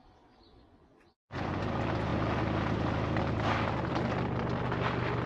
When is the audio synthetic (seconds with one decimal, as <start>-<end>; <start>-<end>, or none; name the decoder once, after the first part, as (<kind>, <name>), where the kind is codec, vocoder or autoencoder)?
0.5-1.6 (vocoder, Vocos)